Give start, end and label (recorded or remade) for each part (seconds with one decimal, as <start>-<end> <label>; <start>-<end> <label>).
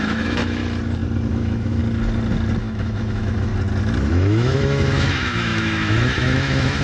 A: 0.0-0.6 remade; 0.6-1.3 recorded; 1.3-1.8 remade; 1.8-2.6 recorded; 2.6-3.5 remade; 3.5-4.1 recorded; 4.1-6.8 remade